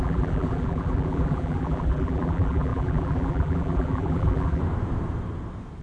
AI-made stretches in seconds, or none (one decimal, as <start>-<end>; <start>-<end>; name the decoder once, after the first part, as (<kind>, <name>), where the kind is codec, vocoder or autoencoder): 0.0-4.6 (vocoder, BigVGAN v2)